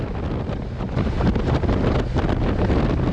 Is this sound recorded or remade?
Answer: recorded